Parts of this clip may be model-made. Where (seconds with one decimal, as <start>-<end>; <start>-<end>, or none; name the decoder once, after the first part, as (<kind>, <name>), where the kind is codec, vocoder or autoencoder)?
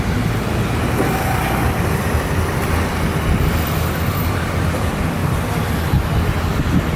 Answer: 1.6-2.4 (vocoder, BigVGAN v2); 5.2-6.6